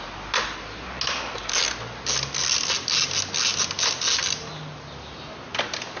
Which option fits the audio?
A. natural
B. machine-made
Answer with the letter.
A